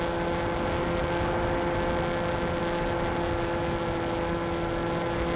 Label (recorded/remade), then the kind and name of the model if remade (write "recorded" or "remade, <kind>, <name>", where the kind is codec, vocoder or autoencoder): recorded